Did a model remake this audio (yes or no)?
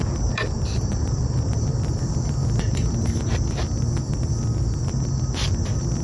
no